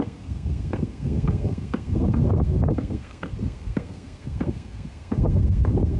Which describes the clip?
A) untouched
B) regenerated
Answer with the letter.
B